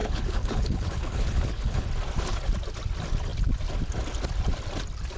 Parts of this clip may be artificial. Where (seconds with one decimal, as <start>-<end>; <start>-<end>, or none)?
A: 0.0-1.9